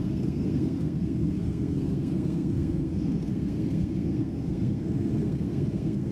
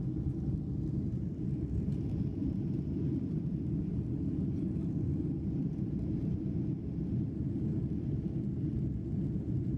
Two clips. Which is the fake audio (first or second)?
first